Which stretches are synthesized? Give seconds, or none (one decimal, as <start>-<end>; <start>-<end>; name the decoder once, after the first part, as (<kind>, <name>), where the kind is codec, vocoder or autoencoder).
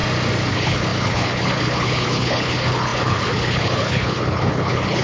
0.5-5.0 (codec, HILCodec)